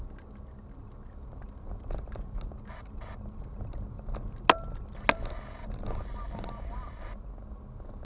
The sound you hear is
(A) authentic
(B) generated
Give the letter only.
A